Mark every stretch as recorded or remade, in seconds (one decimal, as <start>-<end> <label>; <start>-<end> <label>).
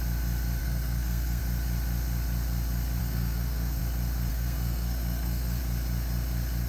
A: 0.0-0.6 recorded; 0.6-1.4 remade; 1.4-3.0 recorded; 3.0-3.8 remade; 3.8-4.3 recorded; 4.3-5.6 remade; 5.6-6.7 recorded